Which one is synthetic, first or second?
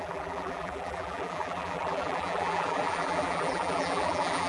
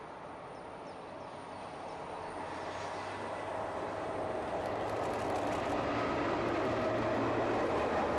first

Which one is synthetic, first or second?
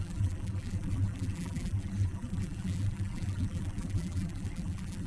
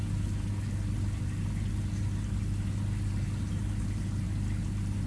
first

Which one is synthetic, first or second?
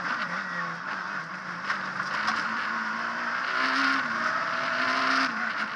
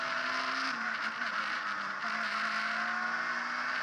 first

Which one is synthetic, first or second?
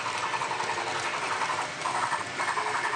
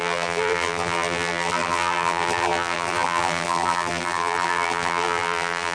second